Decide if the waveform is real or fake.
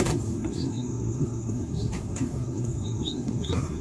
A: fake